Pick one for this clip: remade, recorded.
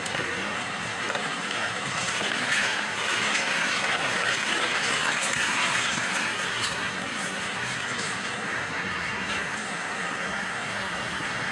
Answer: remade